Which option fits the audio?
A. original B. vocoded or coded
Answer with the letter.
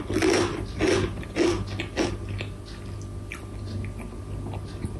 A